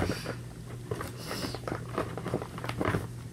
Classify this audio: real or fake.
real